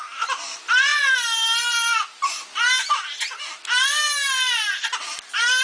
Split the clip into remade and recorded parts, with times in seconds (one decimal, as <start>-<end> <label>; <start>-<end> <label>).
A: 0.0-5.6 recorded